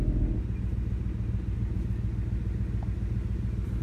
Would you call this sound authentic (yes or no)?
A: yes